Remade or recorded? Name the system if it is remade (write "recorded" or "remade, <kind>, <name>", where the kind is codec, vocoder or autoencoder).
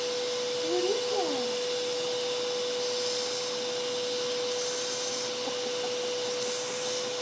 recorded